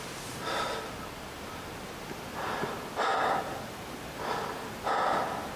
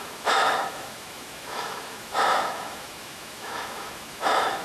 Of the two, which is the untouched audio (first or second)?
first